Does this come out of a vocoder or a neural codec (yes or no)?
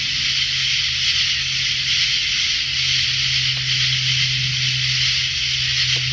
no